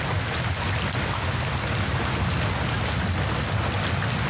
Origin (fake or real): real